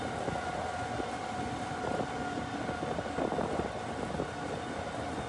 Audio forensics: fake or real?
real